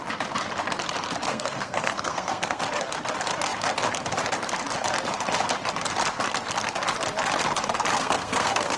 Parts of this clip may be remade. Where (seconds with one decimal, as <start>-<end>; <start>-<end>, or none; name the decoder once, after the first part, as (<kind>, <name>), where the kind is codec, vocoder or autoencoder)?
1.3-2.6 (codec, SNAC); 7.9-8.8